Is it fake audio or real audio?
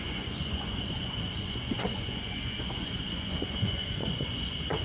fake